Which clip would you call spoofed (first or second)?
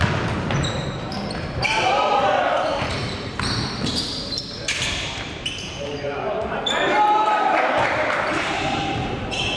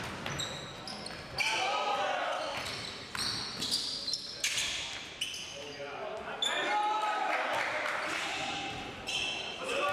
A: first